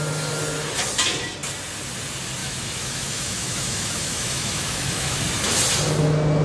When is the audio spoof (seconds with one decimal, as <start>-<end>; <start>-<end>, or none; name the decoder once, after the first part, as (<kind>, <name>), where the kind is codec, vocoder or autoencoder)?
2.4-5.2 (autoencoder, DAC-VAE)